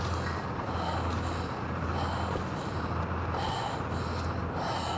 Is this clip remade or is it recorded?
recorded